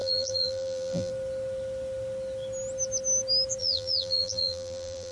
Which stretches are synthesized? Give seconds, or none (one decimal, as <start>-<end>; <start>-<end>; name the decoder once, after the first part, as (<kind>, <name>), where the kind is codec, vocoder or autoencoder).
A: 0.0-1.1 (vocoder, BigVGAN v2); 3.6-5.1